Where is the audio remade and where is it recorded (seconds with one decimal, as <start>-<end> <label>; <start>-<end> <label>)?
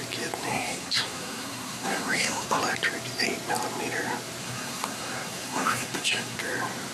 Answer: 0.0-0.5 recorded; 0.5-2.6 remade; 2.6-4.4 recorded; 4.4-6.4 remade; 6.4-6.9 recorded